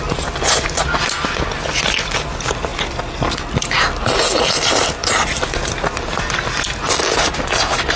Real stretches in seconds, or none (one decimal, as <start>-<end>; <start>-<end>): 0.0-8.0